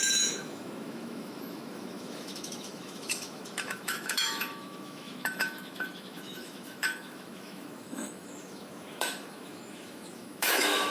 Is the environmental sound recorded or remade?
remade